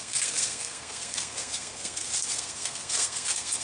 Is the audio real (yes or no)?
no